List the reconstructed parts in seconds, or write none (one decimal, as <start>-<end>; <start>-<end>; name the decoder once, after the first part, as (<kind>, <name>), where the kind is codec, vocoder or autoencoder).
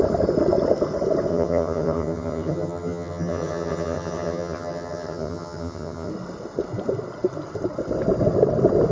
1.3-6.1 (vocoder, HiFi-GAN)